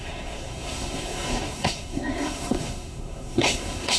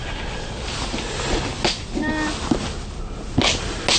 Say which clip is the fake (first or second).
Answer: first